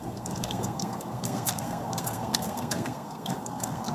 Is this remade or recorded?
remade